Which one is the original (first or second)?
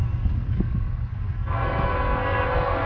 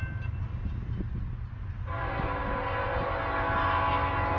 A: second